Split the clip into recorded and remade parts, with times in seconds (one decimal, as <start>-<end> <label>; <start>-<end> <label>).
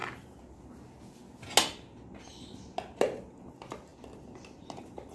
0.0-5.1 recorded